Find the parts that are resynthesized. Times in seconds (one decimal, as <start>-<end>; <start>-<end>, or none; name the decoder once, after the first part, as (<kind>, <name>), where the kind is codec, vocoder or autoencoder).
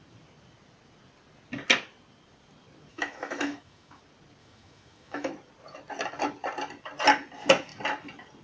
2.9-4.0 (autoencoder, DAC-VAE); 4.4-5.3